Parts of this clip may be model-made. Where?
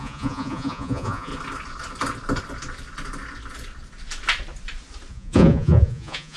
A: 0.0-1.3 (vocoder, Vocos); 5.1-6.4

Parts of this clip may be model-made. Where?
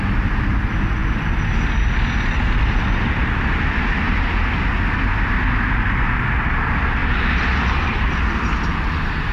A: none